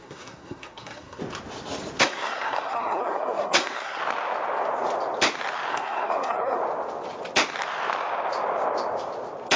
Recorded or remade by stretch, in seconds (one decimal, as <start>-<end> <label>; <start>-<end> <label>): 0.0-1.2 remade; 1.2-2.0 recorded; 2.0-4.0 remade; 4.0-5.7 recorded; 5.7-6.6 remade; 6.6-9.6 recorded